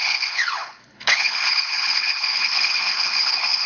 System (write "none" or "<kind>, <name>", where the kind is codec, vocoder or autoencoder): codec, HILCodec